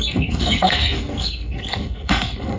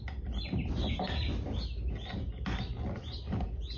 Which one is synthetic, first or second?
first